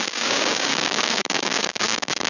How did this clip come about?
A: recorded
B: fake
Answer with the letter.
B